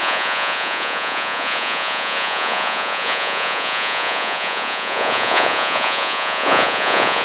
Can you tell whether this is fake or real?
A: fake